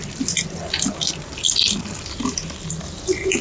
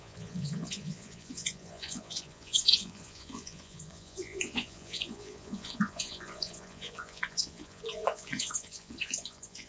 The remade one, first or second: second